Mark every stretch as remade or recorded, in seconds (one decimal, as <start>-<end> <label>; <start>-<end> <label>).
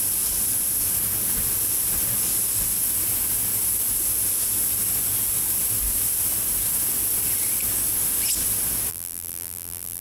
0.0-8.9 recorded; 8.9-10.0 remade